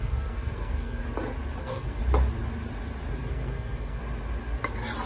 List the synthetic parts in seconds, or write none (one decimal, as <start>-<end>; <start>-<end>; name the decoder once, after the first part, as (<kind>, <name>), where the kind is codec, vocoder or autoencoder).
0.0-1.0 (codec, SNAC); 1.6-2.0; 3.3-4.0